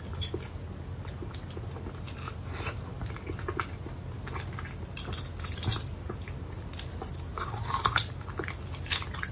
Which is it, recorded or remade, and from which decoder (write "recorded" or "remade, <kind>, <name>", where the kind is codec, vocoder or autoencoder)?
recorded